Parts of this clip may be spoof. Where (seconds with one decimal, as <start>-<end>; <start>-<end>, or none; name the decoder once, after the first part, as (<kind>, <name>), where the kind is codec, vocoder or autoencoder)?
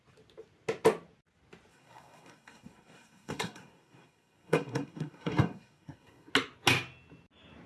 1.7-6.3 (codec, SNAC)